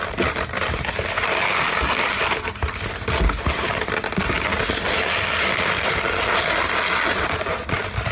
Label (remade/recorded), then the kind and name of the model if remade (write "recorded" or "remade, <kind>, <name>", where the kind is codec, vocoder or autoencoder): recorded